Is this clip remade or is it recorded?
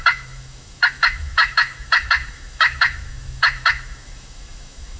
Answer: remade